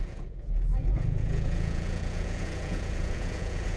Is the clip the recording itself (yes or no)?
no